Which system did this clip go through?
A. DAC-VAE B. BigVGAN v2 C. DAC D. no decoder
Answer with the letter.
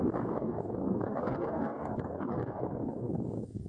C